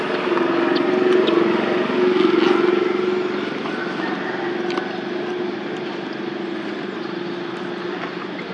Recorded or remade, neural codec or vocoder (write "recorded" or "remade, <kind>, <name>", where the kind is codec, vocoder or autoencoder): recorded